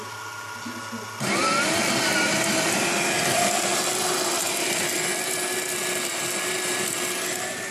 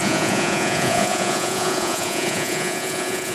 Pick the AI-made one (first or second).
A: second